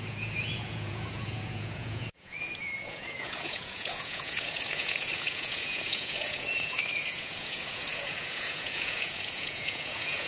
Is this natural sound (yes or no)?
no